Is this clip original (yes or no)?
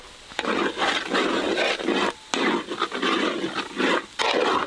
yes